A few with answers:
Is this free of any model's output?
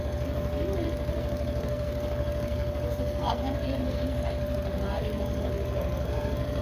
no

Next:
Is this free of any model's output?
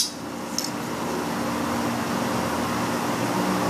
yes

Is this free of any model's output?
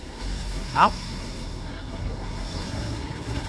no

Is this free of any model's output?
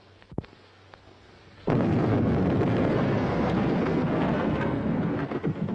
no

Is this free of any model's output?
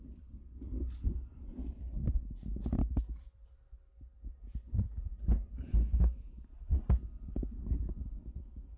yes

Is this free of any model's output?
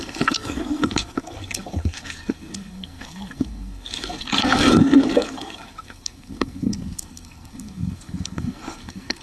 no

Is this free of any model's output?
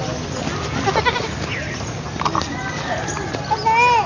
yes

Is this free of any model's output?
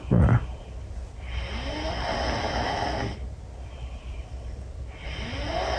yes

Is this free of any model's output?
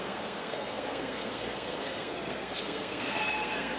no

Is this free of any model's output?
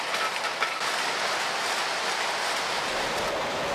yes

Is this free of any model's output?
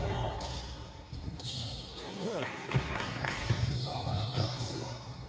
no